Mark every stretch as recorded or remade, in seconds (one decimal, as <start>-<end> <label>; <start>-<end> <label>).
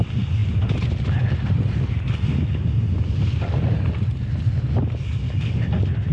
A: 0.0-6.1 recorded